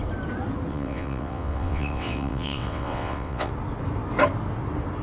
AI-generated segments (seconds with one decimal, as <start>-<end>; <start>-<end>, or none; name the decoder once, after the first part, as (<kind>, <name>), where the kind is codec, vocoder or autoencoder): 0.7-3.5 (vocoder, WaveNeXt)